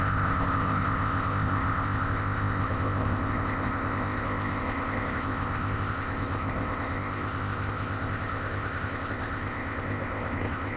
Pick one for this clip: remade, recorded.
remade